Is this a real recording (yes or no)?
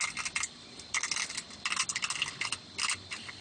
yes